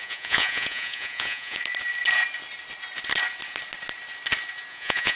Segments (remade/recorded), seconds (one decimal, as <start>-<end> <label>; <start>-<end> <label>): 0.0-1.6 remade; 1.6-4.7 recorded; 4.7-5.2 remade